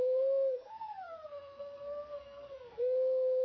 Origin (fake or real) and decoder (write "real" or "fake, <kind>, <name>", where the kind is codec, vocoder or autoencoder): fake, codec, SNAC